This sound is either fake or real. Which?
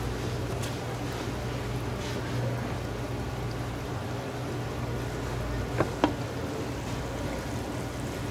real